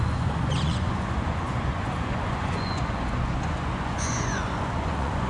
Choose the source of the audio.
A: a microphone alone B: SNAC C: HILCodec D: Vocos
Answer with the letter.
D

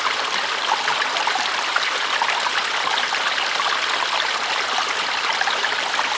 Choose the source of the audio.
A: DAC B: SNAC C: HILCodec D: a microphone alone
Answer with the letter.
D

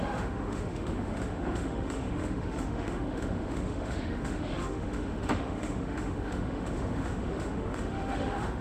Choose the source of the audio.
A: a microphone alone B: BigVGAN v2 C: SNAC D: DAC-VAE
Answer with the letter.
D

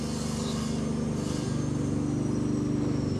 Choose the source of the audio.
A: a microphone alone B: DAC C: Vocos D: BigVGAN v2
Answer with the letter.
A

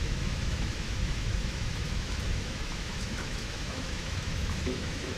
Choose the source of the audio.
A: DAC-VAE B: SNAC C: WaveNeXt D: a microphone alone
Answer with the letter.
A